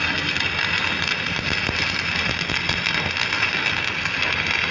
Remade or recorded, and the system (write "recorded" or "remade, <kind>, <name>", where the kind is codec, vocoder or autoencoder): recorded